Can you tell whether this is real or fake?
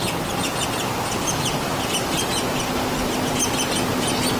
real